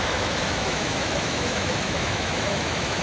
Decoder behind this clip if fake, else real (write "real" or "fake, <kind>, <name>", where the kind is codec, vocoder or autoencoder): fake, autoencoder, DAC-VAE